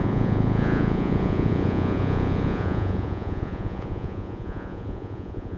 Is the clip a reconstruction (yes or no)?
yes